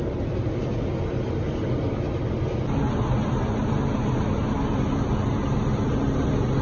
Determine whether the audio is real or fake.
real